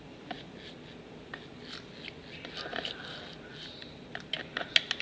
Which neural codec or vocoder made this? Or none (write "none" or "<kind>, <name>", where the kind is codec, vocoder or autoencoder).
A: none